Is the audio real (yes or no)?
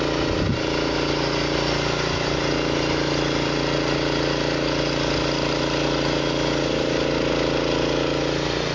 yes